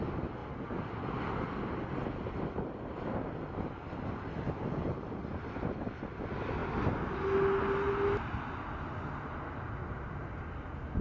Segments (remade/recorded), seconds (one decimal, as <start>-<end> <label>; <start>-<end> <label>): 0.0-5.2 recorded; 5.2-6.0 remade; 6.0-11.0 recorded